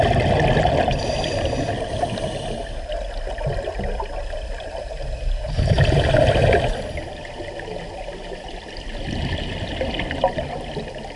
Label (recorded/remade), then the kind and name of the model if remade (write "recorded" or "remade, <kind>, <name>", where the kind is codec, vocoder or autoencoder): recorded